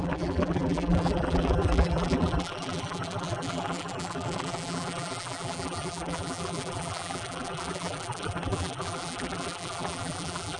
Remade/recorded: remade